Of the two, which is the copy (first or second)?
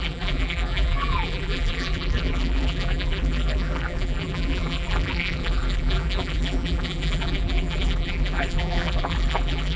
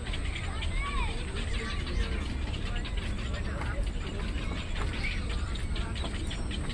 first